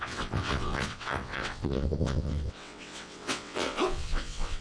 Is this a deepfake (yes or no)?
yes